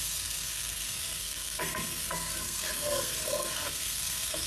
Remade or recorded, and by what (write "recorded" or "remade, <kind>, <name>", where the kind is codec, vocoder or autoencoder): remade, codec, SNAC